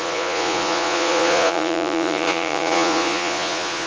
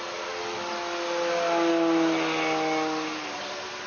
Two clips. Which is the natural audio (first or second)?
second